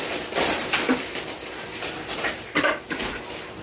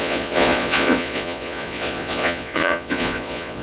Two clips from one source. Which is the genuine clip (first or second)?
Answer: first